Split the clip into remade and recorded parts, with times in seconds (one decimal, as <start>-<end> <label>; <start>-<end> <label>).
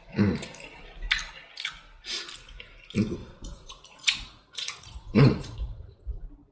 0.0-3.2 recorded; 3.2-6.1 remade; 6.1-6.5 recorded